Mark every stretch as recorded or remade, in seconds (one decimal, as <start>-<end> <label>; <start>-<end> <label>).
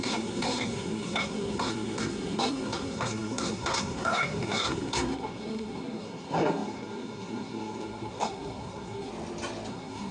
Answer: 0.0-9.1 remade; 9.1-9.7 recorded; 9.7-10.1 remade